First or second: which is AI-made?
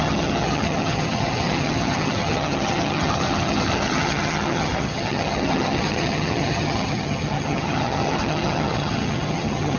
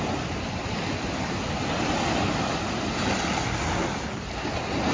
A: first